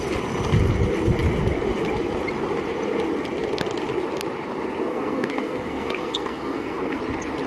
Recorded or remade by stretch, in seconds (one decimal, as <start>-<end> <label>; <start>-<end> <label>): 0.0-4.9 recorded; 4.9-7.0 remade; 7.0-7.5 recorded